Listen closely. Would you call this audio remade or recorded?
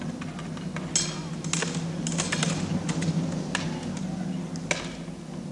recorded